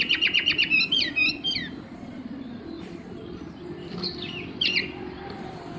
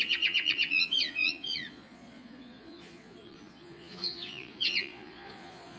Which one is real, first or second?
first